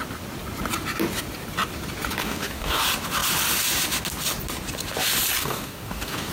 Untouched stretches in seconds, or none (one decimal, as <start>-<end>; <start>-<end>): 0.0-2.2; 2.8-5.4